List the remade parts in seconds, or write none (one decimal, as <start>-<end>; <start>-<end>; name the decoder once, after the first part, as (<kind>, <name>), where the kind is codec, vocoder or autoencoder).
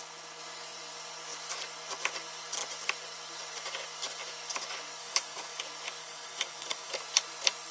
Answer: 5.0-5.6 (codec, DAC); 6.0-6.9